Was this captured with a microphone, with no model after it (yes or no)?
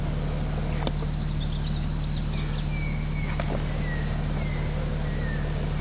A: yes